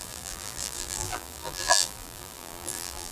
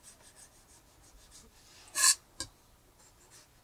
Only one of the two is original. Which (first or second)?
second